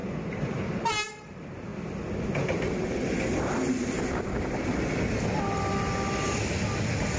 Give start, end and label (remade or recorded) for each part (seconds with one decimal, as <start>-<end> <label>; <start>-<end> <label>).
0.0-0.7 remade; 0.7-7.2 recorded